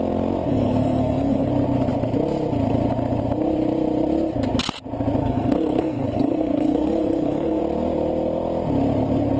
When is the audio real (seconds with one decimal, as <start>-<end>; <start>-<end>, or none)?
0.0-0.5; 1.5-5.2; 7.6-9.4